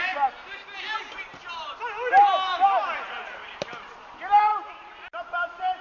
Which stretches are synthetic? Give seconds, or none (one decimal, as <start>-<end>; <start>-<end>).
none